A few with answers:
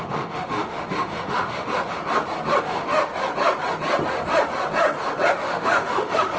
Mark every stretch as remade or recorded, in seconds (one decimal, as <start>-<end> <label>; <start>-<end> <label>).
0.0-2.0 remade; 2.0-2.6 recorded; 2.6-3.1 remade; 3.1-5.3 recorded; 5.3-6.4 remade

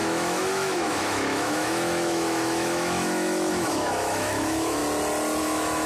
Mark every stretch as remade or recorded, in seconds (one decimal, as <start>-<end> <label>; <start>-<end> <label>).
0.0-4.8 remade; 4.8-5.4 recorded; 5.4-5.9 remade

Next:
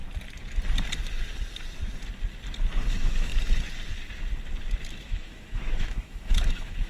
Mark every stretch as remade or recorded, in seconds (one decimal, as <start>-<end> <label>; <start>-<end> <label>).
0.0-2.9 recorded; 2.9-3.3 remade; 3.3-4.9 recorded; 4.9-6.9 remade